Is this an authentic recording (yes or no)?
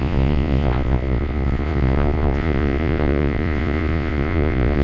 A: no